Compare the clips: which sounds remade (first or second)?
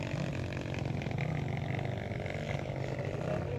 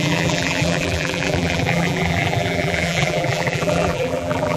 second